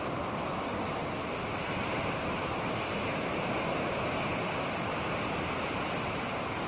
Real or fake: real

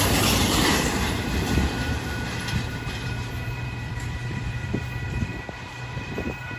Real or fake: fake